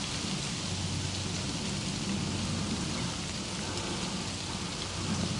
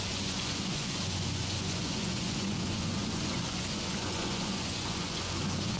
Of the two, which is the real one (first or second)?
first